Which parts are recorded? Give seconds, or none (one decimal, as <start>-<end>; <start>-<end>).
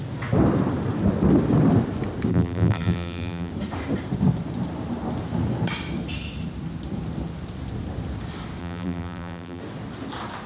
0.0-2.3; 3.5-8.6; 9.6-10.5